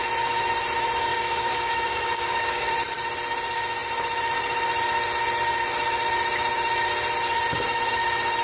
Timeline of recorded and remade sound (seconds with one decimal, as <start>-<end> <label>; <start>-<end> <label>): 0.0-1.1 recorded; 1.1-2.7 remade; 2.7-8.4 recorded